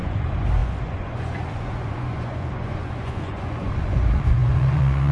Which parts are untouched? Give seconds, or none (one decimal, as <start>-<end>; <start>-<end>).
none